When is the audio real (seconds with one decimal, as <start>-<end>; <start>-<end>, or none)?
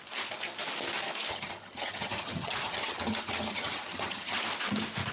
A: 0.0-1.3; 4.4-5.1